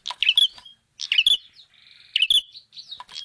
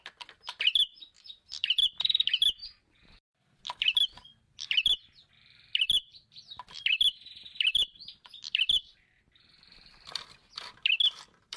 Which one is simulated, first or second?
second